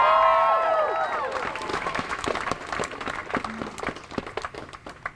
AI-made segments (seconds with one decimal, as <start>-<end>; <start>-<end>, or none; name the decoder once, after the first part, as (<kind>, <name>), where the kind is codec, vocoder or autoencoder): 1.7-2.3 (autoencoder, DAC-VAE)